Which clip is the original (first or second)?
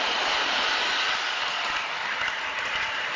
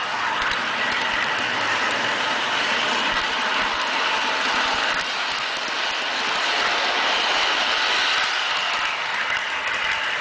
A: second